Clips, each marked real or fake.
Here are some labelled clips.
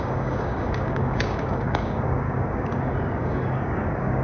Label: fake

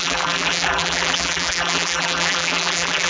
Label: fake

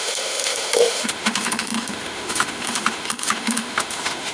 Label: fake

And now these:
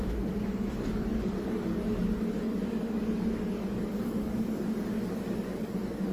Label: fake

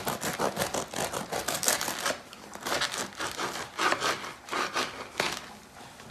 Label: real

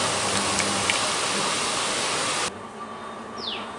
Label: real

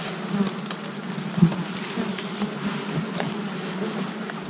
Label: real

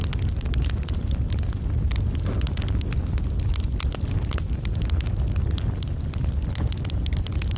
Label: real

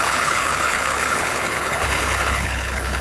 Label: fake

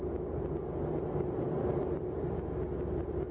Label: real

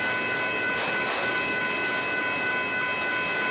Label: real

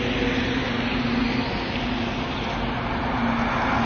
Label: real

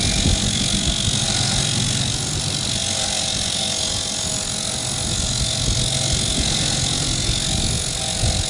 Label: real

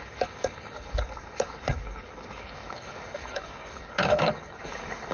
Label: fake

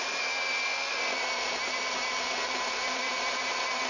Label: real